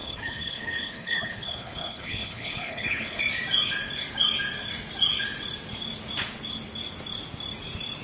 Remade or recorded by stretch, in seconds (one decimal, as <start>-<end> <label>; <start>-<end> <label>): 0.0-3.2 remade; 3.2-8.0 recorded